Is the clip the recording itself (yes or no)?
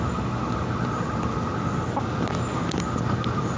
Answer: yes